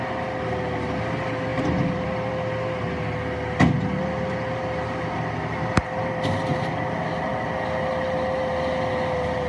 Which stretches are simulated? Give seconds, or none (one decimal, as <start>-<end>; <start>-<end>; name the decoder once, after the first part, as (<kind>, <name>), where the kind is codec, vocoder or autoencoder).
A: 1.5-2.3 (vocoder, BigVGAN v2)